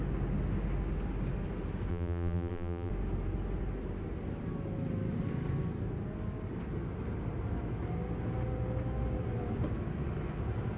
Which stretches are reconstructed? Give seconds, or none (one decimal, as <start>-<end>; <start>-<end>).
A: 1.9-2.9